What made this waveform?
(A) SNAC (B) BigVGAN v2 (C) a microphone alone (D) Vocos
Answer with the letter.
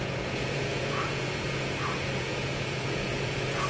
D